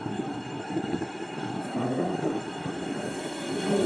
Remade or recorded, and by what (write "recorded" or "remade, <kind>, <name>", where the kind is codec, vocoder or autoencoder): remade, codec, SNAC